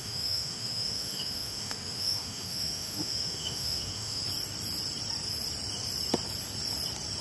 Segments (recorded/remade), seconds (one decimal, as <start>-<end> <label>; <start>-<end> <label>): 0.0-4.2 remade; 4.2-7.2 recorded